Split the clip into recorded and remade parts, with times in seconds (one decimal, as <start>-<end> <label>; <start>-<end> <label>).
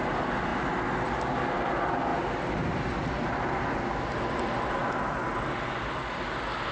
0.0-6.7 recorded